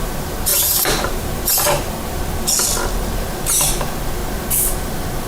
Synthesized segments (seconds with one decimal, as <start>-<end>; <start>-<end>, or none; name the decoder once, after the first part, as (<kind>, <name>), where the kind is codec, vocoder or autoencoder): 0.5-1.4 (vocoder, BigVGAN v2)